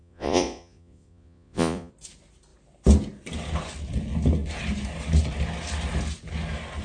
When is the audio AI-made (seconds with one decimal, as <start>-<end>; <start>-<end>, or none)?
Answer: 0.0-1.9